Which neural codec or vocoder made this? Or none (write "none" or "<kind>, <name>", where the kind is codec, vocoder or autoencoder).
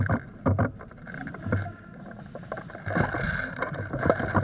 vocoder, BigVGAN v2